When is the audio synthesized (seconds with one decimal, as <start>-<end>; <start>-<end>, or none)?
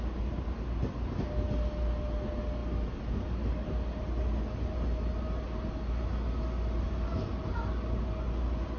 none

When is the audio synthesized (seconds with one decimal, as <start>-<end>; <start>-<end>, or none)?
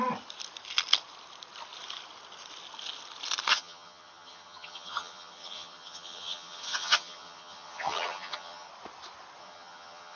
3.5-8.7; 9.4-10.2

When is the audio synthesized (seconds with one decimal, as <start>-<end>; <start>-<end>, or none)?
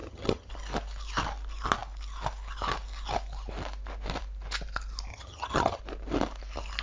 0.0-0.5; 5.1-5.8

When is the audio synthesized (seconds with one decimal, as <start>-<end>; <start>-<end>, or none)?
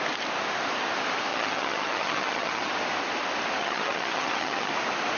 1.3-2.7; 3.6-4.7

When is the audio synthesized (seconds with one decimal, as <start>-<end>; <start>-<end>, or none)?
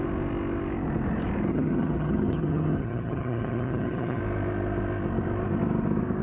1.5-4.2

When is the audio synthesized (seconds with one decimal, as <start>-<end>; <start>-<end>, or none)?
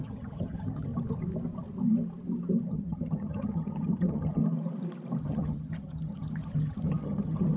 0.0-0.9; 2.7-4.4; 5.2-7.6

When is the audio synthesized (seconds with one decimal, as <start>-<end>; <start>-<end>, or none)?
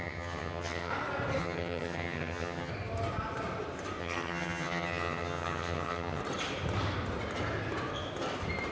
0.0-0.9; 1.4-2.7; 4.0-6.2